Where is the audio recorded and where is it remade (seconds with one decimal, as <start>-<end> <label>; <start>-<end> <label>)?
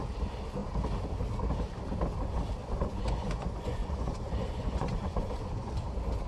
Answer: 0.0-2.6 recorded; 2.6-5.7 remade; 5.7-6.3 recorded